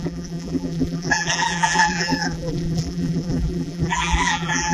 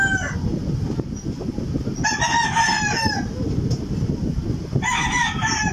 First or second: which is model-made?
first